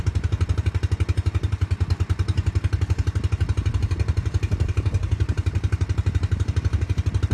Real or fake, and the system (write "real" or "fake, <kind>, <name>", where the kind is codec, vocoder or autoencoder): real